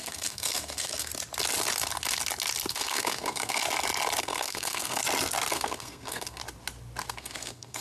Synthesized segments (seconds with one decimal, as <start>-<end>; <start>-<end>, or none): 0.0-1.1; 2.7-3.6; 4.2-5.0; 5.5-6.4; 7.1-7.8